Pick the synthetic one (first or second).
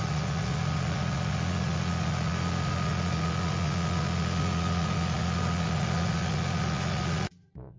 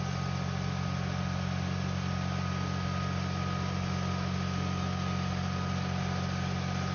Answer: first